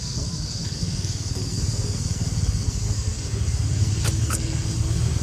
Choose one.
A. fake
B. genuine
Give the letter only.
A